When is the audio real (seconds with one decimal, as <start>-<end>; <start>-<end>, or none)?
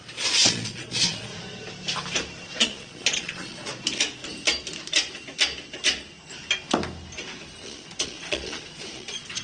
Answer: 1.3-2.6; 3.7-7.6